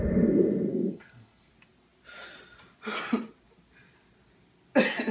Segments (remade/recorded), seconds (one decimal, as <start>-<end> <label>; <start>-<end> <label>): 0.0-0.7 recorded; 0.7-1.5 remade; 1.5-5.1 recorded